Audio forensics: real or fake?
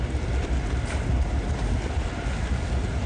real